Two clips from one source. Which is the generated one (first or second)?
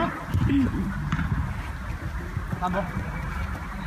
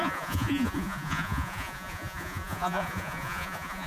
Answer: second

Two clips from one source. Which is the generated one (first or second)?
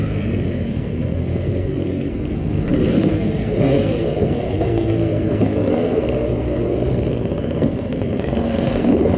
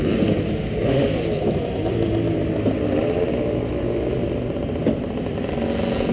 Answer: first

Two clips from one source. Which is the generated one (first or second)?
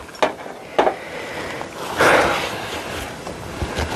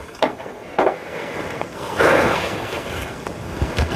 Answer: second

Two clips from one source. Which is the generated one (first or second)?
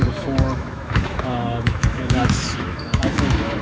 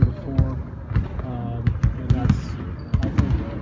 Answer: first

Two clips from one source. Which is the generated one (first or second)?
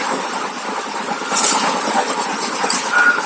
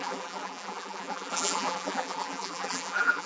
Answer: second